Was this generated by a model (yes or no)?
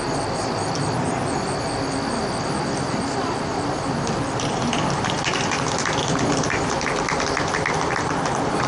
no